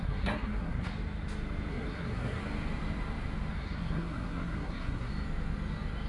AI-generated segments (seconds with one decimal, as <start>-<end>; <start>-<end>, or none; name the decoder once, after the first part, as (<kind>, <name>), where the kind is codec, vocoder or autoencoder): 0.0-0.9 (codec, SNAC); 1.7-2.4; 3.5-5.1